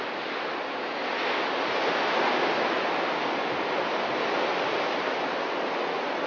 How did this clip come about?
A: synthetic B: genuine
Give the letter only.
B